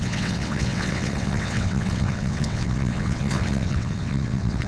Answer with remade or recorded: remade